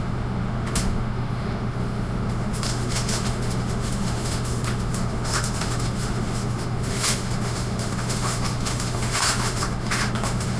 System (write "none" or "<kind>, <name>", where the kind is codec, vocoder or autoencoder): autoencoder, DAC-VAE